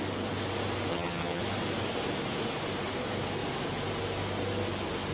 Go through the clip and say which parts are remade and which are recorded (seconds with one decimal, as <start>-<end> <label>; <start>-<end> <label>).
0.0-0.9 recorded; 0.9-1.4 remade; 1.4-5.1 recorded